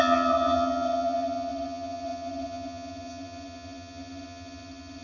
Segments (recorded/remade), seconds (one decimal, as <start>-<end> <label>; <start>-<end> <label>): 0.0-5.0 remade